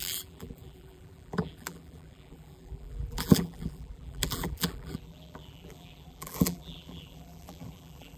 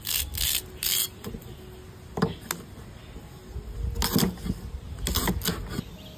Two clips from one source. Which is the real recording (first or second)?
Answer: second